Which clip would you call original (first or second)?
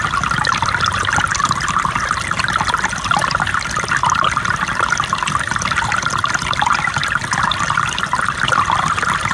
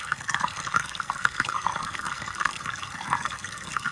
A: first